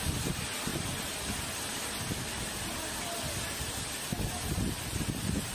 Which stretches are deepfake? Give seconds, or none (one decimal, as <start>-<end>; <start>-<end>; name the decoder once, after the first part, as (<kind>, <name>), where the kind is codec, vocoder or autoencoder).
none